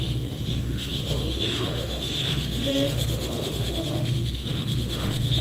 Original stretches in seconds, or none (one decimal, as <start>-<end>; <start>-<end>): none